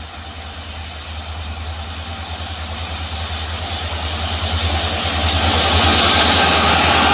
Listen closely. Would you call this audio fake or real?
real